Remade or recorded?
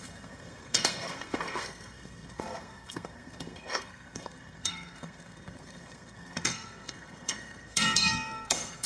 remade